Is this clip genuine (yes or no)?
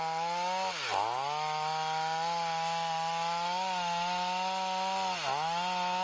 yes